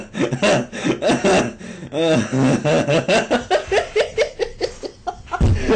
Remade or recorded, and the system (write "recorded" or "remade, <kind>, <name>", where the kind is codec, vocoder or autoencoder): recorded